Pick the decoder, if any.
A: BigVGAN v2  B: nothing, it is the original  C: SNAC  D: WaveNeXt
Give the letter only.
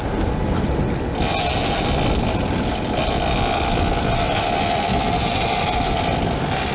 B